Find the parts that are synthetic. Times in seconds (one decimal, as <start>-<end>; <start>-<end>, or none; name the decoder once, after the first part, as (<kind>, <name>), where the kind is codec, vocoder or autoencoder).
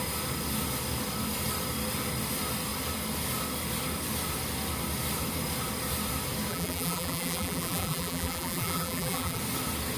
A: 6.5-9.4 (vocoder, BigVGAN v2)